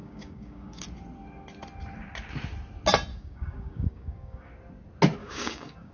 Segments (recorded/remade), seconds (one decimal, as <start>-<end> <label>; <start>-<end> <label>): 0.0-0.8 remade; 0.8-3.1 recorded; 3.1-4.5 remade; 4.5-5.2 recorded; 5.2-5.9 remade

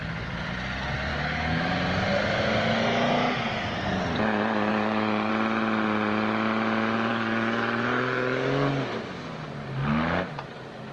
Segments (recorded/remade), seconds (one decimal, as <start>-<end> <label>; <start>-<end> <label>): 0.0-1.1 recorded; 1.1-1.7 remade; 1.7-4.7 recorded; 4.7-5.3 remade; 5.3-7.1 recorded; 7.1-8.8 remade; 8.8-10.9 recorded